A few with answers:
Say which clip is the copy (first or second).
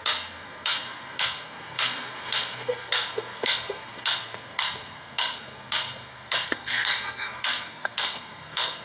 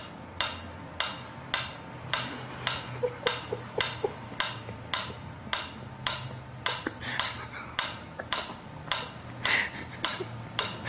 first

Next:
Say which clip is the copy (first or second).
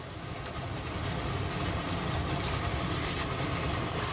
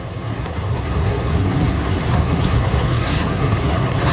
second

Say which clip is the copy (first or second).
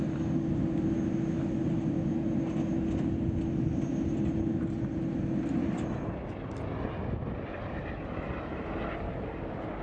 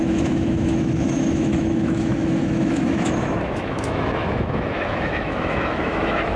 second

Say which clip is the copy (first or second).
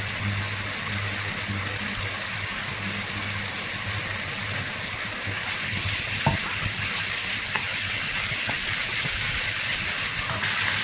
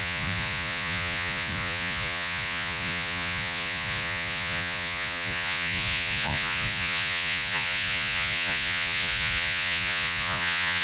second